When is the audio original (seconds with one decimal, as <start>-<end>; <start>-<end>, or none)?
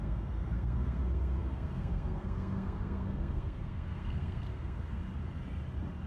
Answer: 5.0-6.1